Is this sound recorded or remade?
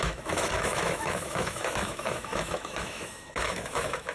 remade